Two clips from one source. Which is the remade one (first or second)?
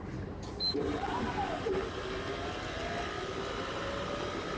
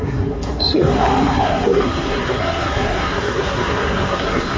second